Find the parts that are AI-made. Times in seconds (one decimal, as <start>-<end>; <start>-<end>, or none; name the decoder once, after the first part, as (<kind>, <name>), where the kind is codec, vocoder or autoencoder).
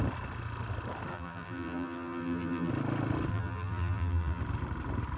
1.1-2.7 (vocoder, BigVGAN v2); 3.3-4.4